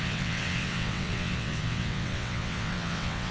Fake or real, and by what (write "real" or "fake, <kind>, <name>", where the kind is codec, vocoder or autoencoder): fake, vocoder, WaveNeXt